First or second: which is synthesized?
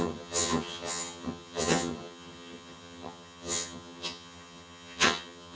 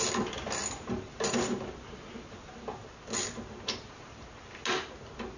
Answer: first